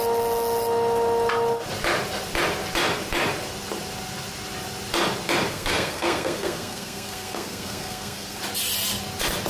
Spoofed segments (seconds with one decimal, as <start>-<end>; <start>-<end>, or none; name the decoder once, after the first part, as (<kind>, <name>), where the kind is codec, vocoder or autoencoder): 5.5-8.4 (codec, SNAC)